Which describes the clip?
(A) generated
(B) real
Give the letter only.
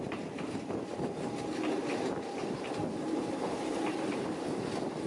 B